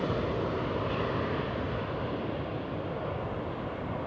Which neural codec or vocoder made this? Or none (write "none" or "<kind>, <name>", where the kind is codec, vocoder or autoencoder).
none